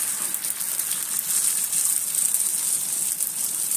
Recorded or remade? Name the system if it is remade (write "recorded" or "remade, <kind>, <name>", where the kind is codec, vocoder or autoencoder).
recorded